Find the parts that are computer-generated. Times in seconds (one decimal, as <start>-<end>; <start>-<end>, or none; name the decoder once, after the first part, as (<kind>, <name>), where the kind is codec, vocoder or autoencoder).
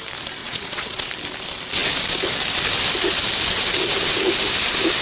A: 0.4-1.1 (vocoder, WaveNeXt)